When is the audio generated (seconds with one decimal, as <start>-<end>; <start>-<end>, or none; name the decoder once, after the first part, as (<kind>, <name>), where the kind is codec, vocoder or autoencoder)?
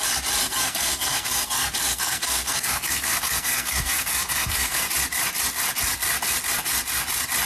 0.4-4.9 (codec, SNAC)